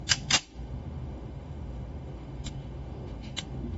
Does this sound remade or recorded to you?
remade